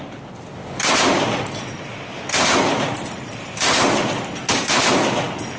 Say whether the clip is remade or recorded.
recorded